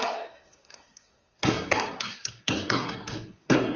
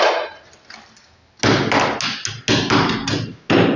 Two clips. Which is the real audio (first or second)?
second